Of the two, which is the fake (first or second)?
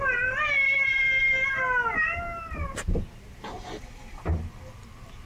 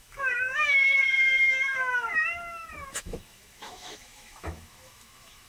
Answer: second